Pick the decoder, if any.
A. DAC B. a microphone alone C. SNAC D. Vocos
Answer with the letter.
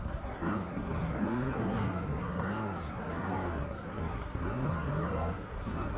C